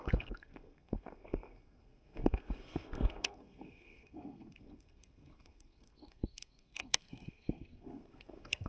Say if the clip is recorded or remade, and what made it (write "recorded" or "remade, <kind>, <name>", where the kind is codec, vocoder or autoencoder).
remade, codec, SNAC